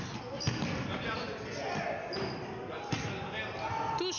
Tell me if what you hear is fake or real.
real